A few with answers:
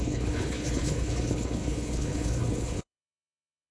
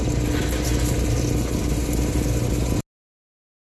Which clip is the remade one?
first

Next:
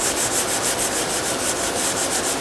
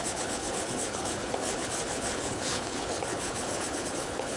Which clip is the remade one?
second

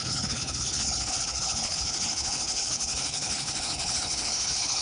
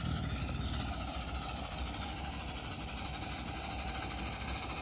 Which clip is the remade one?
first